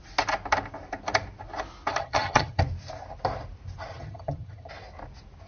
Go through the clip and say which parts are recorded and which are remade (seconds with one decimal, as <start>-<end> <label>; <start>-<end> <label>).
0.0-2.0 recorded; 2.0-2.6 remade; 2.6-3.9 recorded; 3.9-4.7 remade; 4.7-5.5 recorded